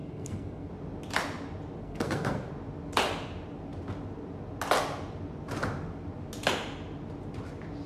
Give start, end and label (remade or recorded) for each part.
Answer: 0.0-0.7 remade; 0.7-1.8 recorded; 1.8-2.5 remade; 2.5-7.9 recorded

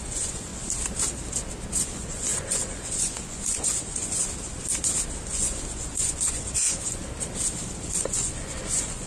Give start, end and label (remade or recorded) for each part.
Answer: 0.0-0.5 remade; 0.5-1.8 recorded; 1.8-4.2 remade; 4.2-5.3 recorded; 5.3-7.0 remade; 7.0-7.9 recorded; 7.9-9.1 remade

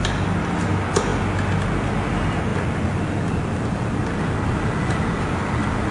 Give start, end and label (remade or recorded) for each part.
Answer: 0.0-5.9 recorded

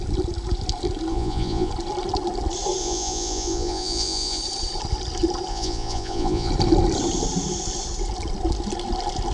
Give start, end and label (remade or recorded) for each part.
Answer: 0.0-1.1 recorded; 1.1-1.7 remade; 1.7-2.8 recorded; 2.8-4.4 remade; 4.4-5.5 recorded; 5.5-6.5 remade; 6.5-9.3 recorded

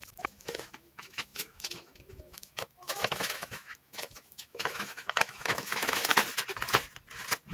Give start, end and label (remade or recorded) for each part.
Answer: 0.0-6.1 remade; 6.1-7.5 recorded

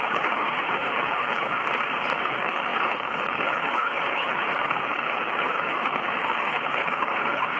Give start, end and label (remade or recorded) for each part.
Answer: 0.0-1.6 remade; 1.6-2.2 recorded; 2.2-7.6 remade